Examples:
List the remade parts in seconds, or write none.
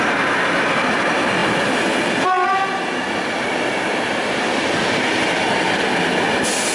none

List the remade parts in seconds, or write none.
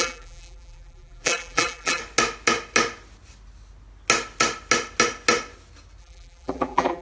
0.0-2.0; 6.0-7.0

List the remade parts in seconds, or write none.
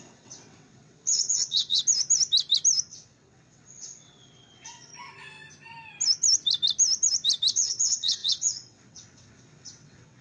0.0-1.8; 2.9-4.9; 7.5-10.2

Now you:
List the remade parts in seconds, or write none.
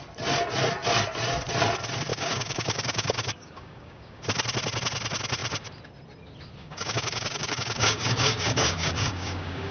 2.1-4.2; 6.6-9.7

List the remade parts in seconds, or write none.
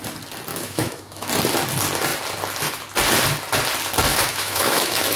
0.5-1.3; 4.1-5.2